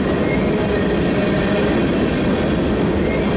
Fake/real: real